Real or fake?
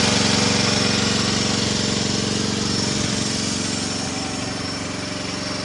real